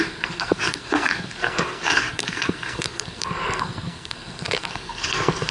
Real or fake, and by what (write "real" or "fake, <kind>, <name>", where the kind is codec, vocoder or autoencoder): fake, codec, SNAC